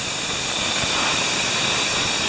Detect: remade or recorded recorded